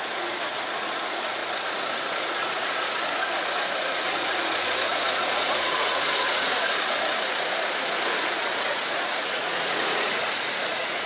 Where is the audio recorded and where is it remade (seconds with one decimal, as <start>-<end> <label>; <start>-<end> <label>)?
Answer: 0.0-1.4 remade; 1.4-2.1 recorded; 2.1-11.1 remade